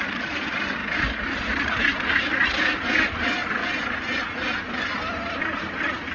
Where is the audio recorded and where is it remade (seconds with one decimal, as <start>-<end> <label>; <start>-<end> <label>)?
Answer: 0.0-6.1 recorded